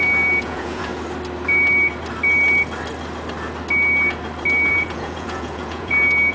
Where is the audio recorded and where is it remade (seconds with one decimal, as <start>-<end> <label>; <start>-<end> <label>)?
0.0-0.9 remade; 0.9-4.7 recorded; 4.7-6.3 remade